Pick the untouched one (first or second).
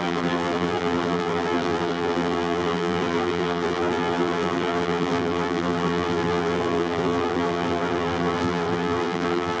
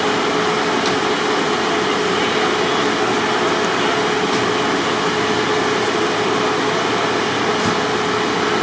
second